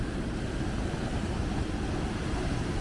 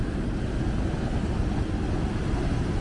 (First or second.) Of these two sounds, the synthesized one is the first